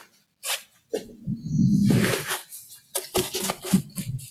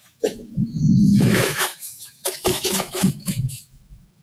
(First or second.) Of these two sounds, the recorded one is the first